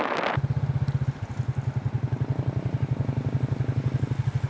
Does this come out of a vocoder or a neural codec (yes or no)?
no